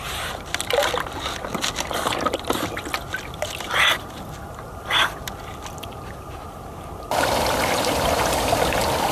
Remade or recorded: recorded